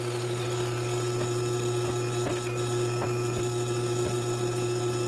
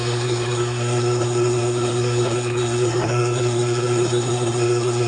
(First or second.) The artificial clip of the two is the second